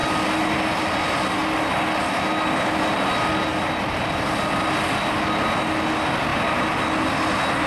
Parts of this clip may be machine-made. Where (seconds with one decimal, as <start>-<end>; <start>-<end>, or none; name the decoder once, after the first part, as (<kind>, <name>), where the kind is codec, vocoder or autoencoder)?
none